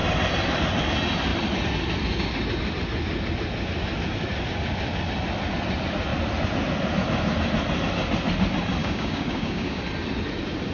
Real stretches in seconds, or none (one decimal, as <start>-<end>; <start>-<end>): 0.0-8.8; 9.8-10.7